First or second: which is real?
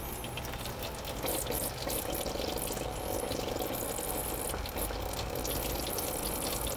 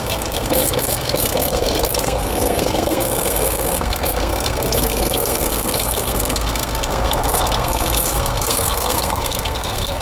first